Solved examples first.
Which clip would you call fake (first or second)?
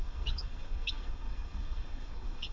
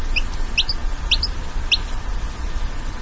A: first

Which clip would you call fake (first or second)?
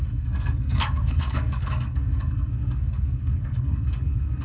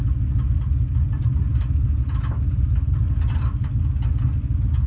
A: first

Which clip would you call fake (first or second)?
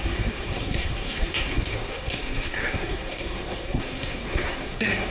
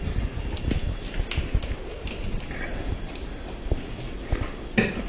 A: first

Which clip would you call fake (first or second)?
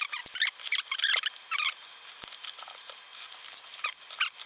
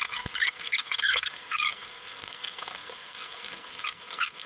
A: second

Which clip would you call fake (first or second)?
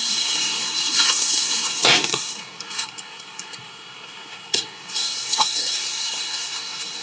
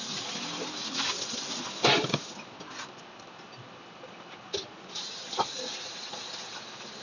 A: first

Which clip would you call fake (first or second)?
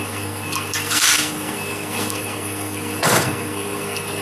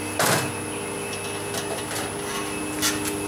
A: first